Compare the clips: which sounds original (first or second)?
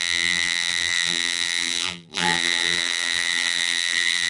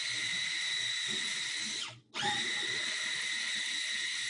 second